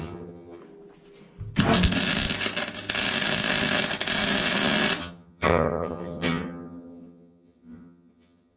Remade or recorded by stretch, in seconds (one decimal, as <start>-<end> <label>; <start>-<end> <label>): 0.0-0.6 remade; 0.6-5.0 recorded; 5.0-8.6 remade